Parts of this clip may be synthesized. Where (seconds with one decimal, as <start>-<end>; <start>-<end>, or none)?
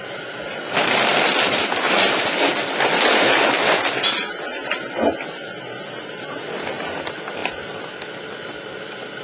none